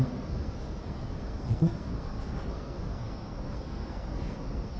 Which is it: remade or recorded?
remade